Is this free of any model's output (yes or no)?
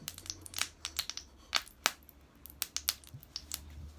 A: yes